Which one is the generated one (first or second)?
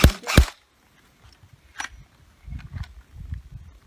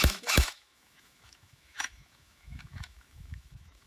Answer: second